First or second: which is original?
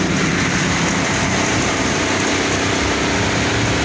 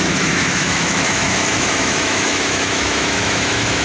first